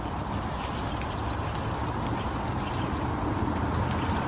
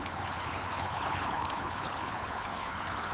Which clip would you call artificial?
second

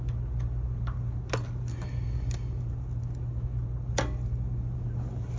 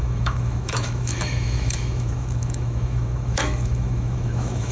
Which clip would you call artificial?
second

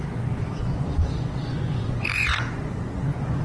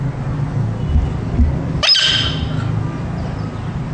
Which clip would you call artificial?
first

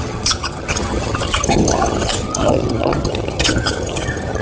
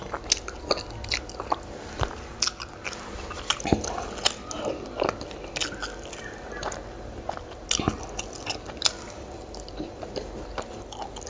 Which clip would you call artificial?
first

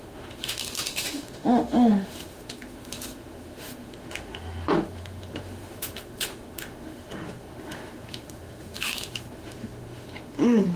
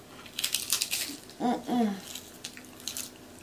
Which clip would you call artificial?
first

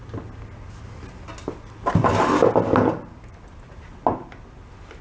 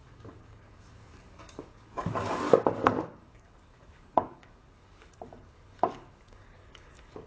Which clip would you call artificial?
second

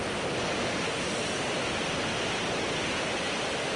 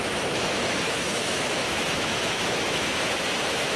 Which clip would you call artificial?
second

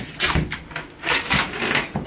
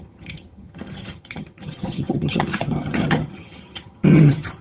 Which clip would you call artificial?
second